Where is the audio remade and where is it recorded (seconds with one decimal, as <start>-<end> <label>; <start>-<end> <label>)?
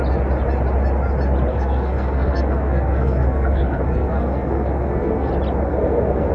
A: 0.0-1.5 recorded; 1.5-5.3 remade; 5.3-5.7 recorded; 5.7-6.3 remade